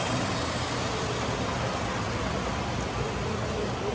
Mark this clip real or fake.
real